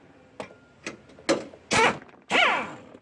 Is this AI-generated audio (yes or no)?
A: no